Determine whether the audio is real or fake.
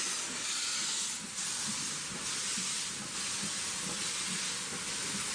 real